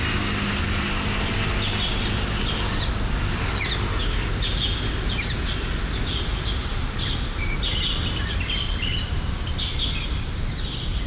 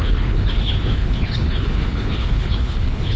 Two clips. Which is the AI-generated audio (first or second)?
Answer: second